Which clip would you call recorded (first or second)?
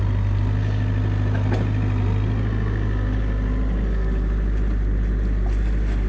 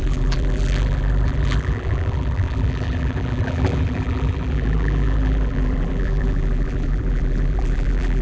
first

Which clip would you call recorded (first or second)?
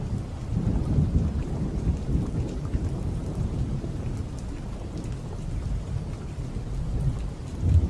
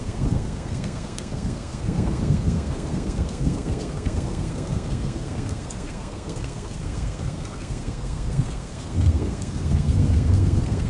first